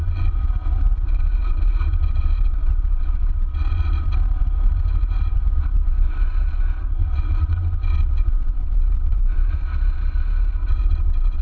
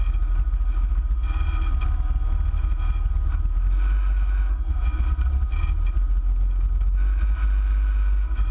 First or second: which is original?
second